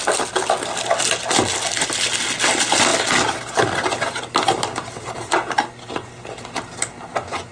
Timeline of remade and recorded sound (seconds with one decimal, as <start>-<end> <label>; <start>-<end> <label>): 0.0-7.5 recorded